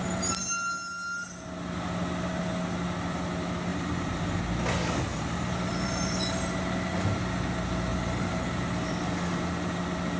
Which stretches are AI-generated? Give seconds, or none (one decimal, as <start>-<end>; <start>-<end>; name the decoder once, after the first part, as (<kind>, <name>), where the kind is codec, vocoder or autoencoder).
3.7-4.4 (vocoder, BigVGAN v2); 5.1-6.2; 7.9-8.7